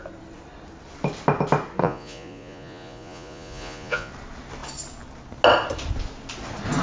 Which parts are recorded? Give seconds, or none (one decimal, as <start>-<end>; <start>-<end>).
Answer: 0.0-1.8; 4.1-6.8